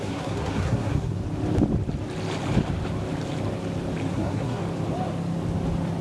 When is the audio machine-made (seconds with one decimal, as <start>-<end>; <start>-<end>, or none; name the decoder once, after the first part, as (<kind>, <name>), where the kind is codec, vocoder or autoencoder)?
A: 0.0-1.2 (codec, SNAC); 4.1-4.6